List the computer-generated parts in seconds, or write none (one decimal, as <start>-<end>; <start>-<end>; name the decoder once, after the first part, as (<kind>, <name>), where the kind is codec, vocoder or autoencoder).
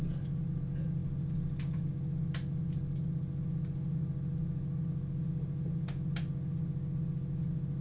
none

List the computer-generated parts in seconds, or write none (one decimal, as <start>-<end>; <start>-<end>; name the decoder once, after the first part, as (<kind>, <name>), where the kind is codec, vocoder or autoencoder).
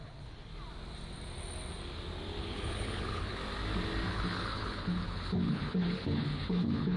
0.0-0.5 (codec, HILCodec); 2.4-3.4; 4.1-7.0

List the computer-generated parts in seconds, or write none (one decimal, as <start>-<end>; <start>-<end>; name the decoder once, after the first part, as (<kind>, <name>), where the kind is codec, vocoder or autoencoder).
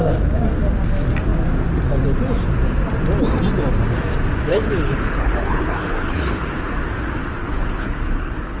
4.5-6.5 (codec, HILCodec); 7.4-8.6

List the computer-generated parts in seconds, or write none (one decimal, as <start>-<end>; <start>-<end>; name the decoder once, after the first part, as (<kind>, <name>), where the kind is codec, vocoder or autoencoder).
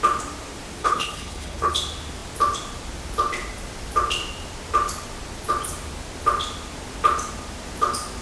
0.8-1.7 (codec, HILCodec)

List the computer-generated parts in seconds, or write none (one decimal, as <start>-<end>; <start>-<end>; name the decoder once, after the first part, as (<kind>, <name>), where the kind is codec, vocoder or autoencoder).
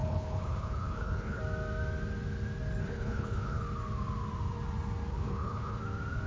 0.0-1.4 (codec, HILCodec); 2.8-3.6; 5.1-5.8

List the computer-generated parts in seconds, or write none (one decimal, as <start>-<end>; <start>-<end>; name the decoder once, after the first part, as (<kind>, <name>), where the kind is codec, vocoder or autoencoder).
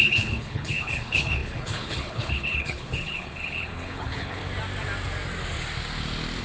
0.0-4.4 (codec, HILCodec)